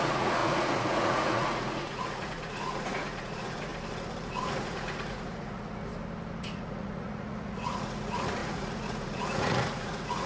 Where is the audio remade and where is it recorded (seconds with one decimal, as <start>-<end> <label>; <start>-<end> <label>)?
0.0-3.7 remade; 3.7-4.3 recorded; 4.3-5.9 remade; 5.9-6.4 recorded; 6.4-10.3 remade